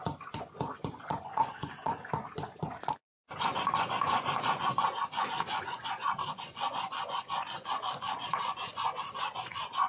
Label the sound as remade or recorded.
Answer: remade